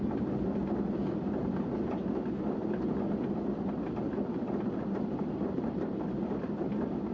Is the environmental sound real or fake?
real